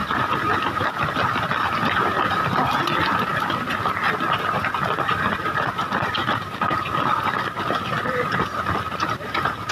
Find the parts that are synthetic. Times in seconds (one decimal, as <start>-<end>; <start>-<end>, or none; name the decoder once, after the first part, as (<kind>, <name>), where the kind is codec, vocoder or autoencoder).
none

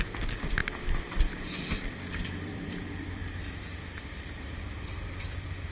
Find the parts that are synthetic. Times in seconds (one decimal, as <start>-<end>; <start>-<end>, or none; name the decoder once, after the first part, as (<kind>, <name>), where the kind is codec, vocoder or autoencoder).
0.0-5.7 (vocoder, BigVGAN v2)

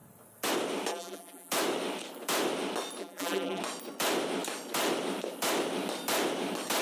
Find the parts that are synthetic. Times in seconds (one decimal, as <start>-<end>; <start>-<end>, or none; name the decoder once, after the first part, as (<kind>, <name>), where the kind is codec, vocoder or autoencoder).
0.9-1.5 (vocoder, BigVGAN v2); 3.0-3.6

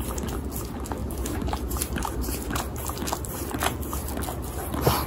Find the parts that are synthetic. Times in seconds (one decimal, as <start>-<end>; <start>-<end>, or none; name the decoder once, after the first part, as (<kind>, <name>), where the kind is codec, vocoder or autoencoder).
1.0-2.6 (vocoder, BigVGAN v2)

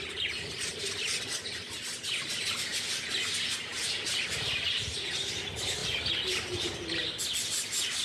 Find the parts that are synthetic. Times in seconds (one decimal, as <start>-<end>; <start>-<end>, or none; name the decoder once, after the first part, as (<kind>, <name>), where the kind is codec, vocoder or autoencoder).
3.7-5.2 (vocoder, BigVGAN v2)

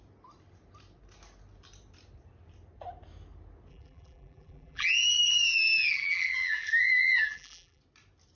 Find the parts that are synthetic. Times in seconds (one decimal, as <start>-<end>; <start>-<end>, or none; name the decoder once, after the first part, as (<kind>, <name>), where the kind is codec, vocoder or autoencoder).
3.7-7.8 (vocoder, BigVGAN v2)

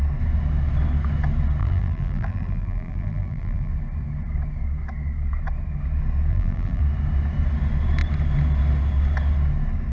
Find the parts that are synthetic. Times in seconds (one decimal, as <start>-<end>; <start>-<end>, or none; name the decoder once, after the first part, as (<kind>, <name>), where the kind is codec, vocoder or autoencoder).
1.6-3.7 (vocoder, BigVGAN v2); 6.3-6.8

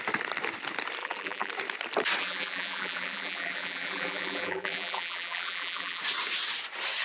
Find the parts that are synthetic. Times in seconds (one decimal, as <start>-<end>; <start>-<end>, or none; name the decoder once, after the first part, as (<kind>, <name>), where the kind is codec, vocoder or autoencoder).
1.0-1.5 (vocoder, BigVGAN v2); 2.2-6.0